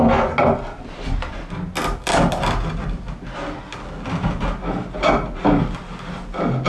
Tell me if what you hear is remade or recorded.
recorded